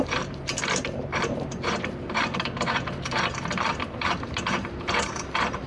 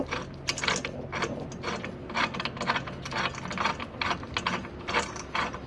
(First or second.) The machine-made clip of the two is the first